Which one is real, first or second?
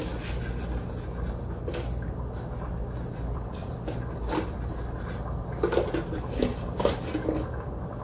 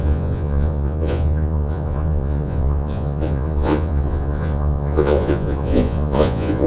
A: first